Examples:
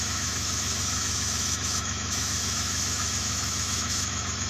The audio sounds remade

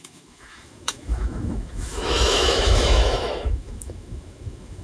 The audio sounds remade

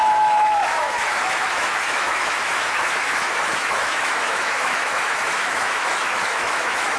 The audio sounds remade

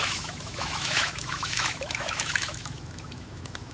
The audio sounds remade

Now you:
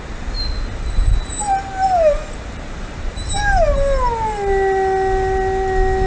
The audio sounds recorded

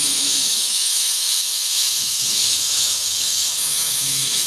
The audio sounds remade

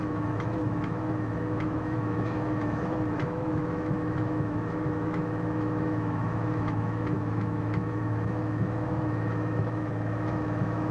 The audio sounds remade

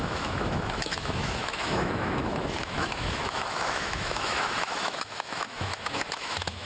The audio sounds remade